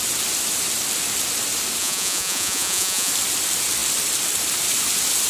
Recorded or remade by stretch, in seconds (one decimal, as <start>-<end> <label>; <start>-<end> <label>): 0.0-1.8 recorded; 1.8-3.1 remade; 3.1-5.3 recorded